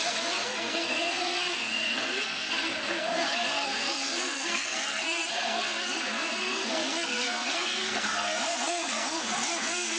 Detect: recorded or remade remade